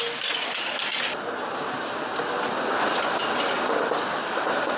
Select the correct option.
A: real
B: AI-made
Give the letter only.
A